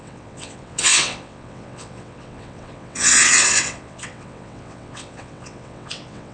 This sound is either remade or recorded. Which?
remade